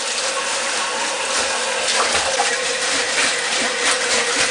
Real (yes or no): yes